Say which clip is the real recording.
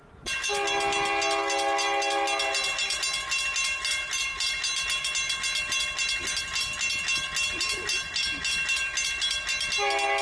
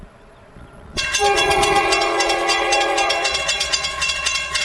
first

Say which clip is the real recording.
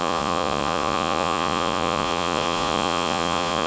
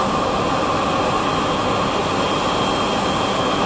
second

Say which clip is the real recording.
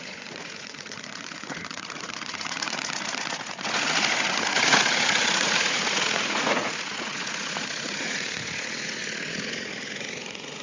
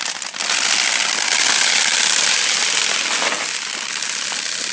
second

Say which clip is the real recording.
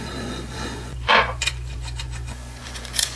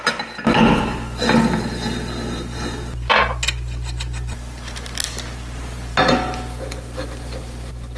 second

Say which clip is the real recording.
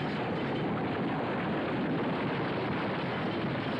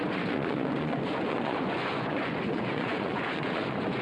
first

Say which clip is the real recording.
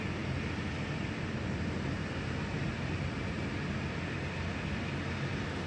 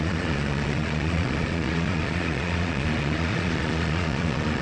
first